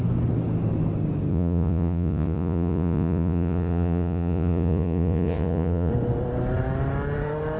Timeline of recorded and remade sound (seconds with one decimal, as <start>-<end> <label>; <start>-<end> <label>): 0.0-1.3 recorded; 1.3-5.9 remade; 5.9-7.6 recorded